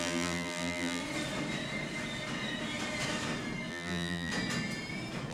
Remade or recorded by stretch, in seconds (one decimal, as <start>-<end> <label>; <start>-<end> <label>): 0.0-1.0 remade; 1.0-3.7 recorded; 3.7-4.3 remade; 4.3-5.3 recorded